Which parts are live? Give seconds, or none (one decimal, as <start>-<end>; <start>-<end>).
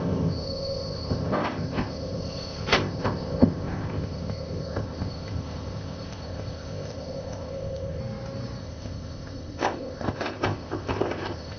8.0-8.6